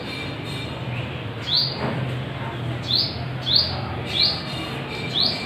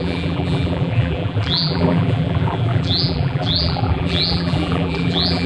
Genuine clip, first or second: first